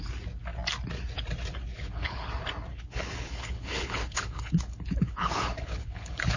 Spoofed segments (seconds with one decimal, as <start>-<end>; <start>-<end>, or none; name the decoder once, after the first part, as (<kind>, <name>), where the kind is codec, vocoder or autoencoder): 1.7-2.3 (codec, HILCodec); 2.7-6.4